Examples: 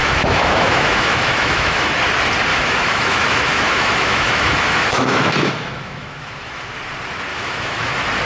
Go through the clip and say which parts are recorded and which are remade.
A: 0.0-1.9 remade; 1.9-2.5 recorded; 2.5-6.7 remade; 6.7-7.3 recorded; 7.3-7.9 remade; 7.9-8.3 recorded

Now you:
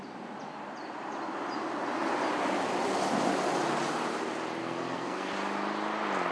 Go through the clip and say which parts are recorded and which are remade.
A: 0.0-4.6 recorded; 4.6-5.3 remade; 5.3-6.3 recorded

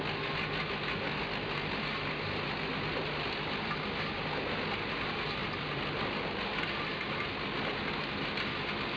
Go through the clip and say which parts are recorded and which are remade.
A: 0.0-9.0 recorded

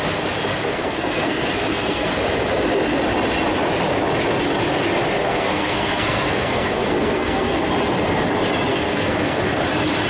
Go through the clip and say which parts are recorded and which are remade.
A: 0.0-0.6 recorded; 0.6-2.1 remade; 2.1-5.2 recorded; 5.2-7.7 remade; 7.7-8.7 recorded; 8.7-9.4 remade; 9.4-10.1 recorded

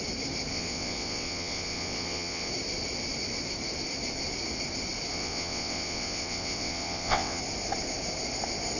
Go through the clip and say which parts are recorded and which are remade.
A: 0.0-0.5 recorded; 0.5-2.5 remade; 2.5-5.1 recorded; 5.1-7.4 remade; 7.4-8.8 recorded